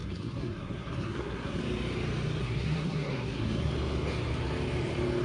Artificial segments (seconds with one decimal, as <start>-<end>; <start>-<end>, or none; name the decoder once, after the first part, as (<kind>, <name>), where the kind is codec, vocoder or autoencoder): 0.0-1.6 (codec, SNAC); 2.4-3.7